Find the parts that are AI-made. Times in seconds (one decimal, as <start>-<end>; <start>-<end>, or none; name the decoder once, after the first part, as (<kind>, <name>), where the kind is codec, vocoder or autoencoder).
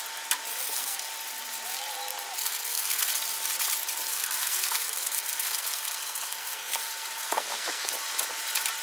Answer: 0.5-1.0 (codec, SNAC); 2.4-3.1; 4.1-7.9